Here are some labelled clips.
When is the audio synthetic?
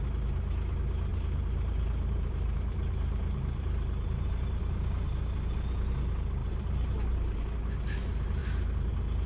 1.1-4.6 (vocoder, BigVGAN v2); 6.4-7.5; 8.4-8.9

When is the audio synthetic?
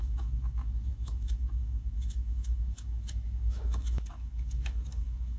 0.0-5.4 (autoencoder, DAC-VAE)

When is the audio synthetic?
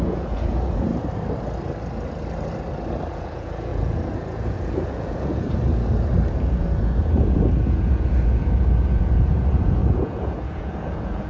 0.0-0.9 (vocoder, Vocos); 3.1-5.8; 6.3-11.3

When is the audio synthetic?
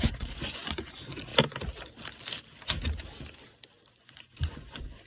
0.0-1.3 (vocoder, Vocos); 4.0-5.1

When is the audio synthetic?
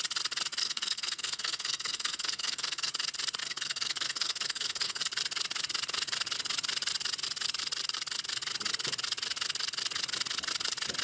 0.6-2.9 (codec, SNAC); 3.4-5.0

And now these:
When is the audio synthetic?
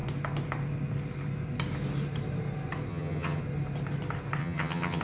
2.9-3.4 (vocoder, HiFi-GAN); 4.4-5.0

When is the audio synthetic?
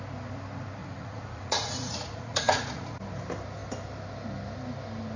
0.8-3.0 (vocoder, Vocos)